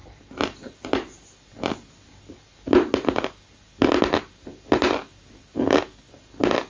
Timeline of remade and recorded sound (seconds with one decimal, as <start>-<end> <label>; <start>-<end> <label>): 0.0-6.7 recorded